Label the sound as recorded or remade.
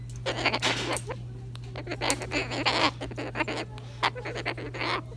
recorded